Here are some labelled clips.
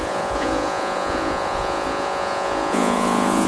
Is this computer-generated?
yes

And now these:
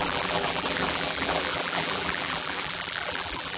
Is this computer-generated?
yes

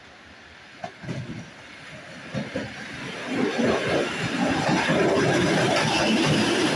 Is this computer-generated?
no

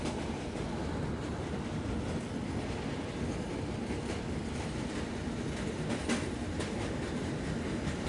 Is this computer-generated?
no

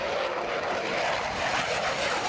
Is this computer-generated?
no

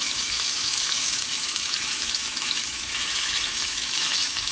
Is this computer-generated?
yes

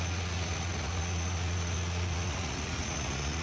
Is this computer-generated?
yes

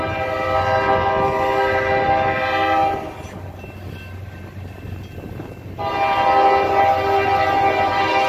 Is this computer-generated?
no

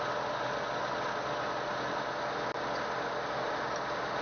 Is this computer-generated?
no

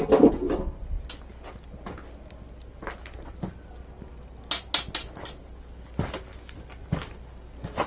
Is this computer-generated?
no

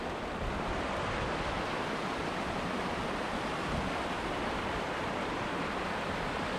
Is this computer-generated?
no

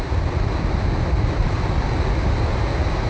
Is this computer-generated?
no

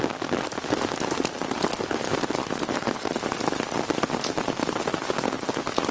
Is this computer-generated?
no